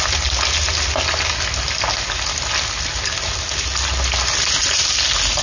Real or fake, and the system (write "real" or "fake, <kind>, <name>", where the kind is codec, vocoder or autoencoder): real